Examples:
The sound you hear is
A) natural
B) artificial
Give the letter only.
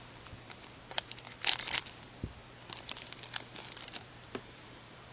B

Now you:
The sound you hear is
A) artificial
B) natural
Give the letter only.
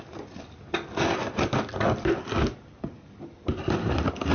B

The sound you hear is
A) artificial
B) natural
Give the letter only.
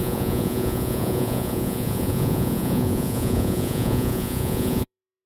A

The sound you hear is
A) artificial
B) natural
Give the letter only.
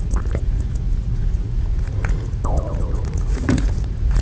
A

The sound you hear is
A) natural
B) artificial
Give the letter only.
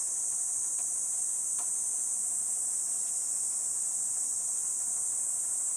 A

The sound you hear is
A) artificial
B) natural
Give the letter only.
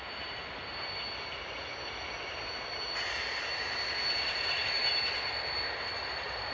B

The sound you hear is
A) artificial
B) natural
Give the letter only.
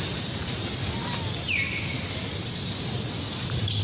B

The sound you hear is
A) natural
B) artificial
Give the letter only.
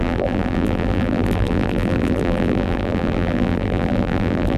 B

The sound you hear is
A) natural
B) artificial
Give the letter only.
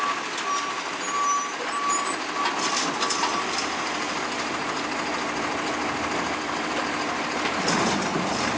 A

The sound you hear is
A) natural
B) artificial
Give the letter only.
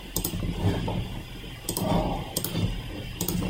A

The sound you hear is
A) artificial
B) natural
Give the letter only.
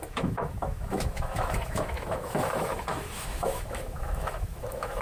A